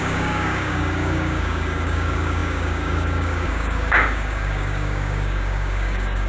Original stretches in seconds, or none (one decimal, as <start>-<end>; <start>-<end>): none